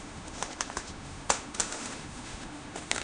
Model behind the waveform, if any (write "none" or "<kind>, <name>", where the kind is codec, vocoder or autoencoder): autoencoder, DAC-VAE